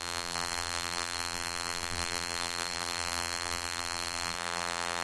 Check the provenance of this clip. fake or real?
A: fake